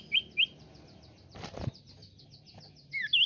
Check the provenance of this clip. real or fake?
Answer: real